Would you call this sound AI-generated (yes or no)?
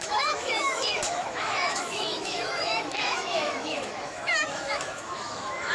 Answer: yes